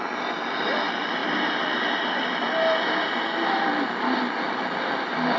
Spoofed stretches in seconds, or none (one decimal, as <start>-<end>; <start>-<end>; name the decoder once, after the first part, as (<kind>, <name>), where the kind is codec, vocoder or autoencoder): none

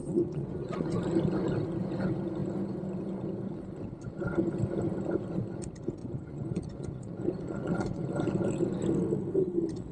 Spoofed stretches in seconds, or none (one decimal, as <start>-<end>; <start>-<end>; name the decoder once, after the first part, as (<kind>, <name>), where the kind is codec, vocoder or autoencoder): 0.0-1.0 (vocoder, Vocos); 6.0-8.0